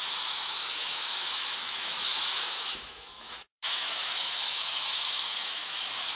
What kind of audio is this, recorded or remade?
remade